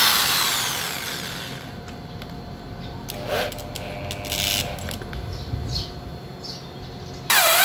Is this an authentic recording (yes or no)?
yes